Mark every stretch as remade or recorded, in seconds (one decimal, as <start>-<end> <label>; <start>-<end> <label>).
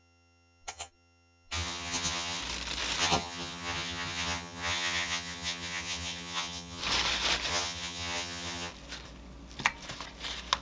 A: 0.0-2.4 remade; 2.4-3.0 recorded; 3.0-6.8 remade; 6.8-7.5 recorded; 7.5-8.7 remade; 8.7-10.6 recorded